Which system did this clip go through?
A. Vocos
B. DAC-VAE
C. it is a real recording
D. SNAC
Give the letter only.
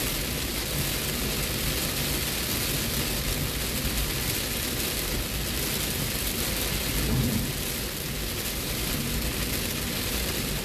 C